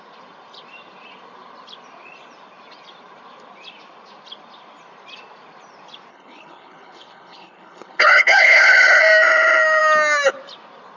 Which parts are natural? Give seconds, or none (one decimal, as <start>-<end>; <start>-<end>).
0.0-6.1; 9.0-11.0